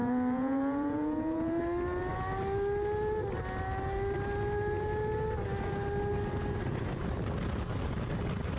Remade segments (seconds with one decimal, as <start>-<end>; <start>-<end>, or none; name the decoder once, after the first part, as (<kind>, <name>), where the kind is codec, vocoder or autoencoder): 0.0-1.6 (vocoder, Vocos)